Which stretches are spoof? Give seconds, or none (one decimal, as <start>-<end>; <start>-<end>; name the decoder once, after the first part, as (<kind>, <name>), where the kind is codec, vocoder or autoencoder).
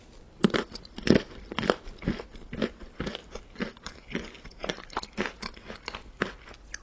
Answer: none